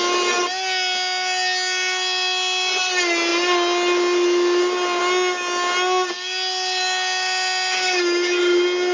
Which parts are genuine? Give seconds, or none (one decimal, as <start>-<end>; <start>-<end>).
0.0-8.9